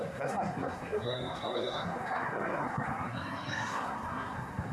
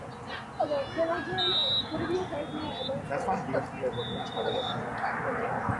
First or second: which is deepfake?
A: first